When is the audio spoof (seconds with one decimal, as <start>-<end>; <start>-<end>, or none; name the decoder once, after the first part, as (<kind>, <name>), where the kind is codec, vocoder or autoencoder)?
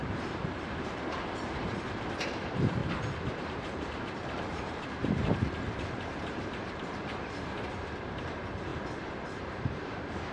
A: 0.0-2.8 (vocoder, BigVGAN v2); 3.3-8.7; 9.4-10.3